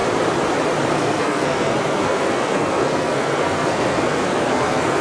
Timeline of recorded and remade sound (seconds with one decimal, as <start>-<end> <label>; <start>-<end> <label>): 0.0-0.9 recorded; 0.9-5.0 remade